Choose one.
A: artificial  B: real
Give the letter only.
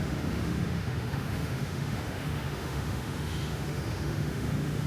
A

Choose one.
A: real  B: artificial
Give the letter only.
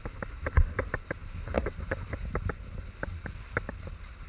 A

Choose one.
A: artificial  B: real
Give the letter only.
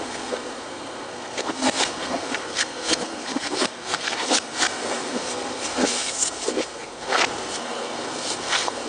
A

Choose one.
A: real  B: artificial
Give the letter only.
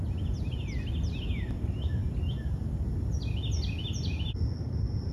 A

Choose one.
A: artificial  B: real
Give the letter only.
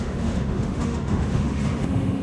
A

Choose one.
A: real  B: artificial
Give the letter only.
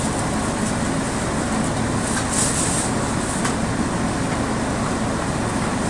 A